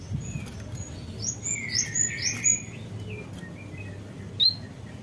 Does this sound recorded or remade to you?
recorded